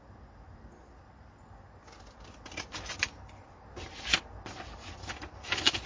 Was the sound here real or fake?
real